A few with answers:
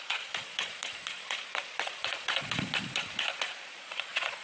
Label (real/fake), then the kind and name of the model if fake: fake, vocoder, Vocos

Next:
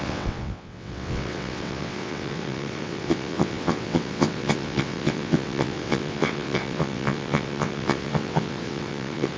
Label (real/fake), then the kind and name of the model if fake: fake, vocoder, WaveNeXt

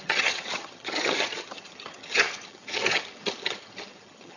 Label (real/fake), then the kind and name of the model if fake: fake, vocoder, HiFi-GAN